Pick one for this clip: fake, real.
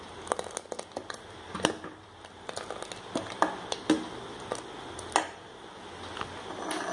real